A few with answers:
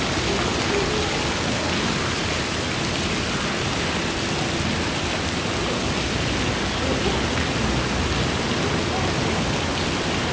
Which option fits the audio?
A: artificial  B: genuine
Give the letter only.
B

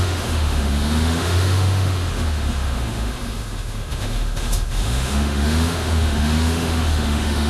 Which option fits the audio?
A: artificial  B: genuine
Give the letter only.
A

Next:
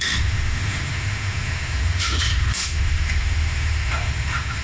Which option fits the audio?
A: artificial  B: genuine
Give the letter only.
A